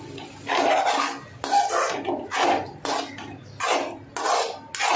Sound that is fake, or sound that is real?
real